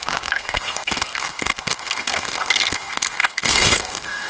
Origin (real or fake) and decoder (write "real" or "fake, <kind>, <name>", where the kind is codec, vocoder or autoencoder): fake, codec, SNAC